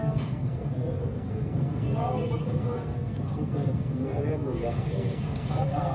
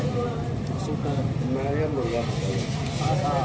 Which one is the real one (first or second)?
second